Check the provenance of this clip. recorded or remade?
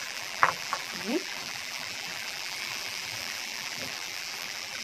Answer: remade